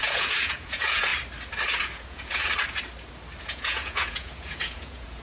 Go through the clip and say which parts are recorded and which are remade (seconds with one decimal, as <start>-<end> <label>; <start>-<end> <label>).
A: 0.0-1.1 remade; 1.1-1.8 recorded; 1.8-2.4 remade; 2.4-3.4 recorded; 3.4-5.2 remade